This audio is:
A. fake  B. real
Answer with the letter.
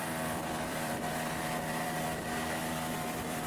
A